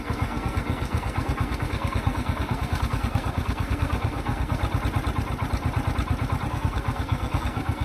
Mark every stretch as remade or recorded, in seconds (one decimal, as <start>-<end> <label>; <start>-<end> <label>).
0.0-4.6 remade; 4.6-6.5 recorded; 6.5-7.8 remade